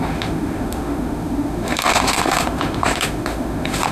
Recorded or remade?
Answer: remade